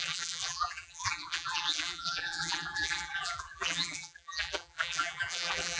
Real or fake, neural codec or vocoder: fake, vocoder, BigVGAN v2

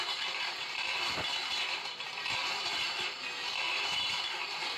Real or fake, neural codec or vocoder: fake, vocoder, BigVGAN v2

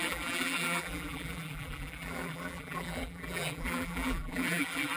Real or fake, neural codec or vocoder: fake, vocoder, BigVGAN v2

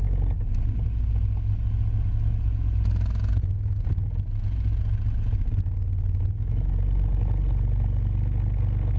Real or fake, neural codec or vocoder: real